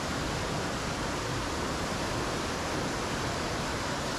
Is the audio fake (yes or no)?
no